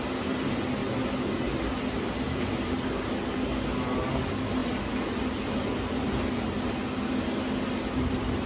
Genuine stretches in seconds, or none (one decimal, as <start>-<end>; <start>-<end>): 0.0-8.5